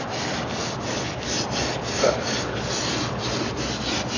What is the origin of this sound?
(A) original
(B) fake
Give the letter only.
A